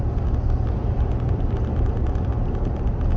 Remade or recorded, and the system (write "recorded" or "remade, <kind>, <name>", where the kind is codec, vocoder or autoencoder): remade, vocoder, BigVGAN v2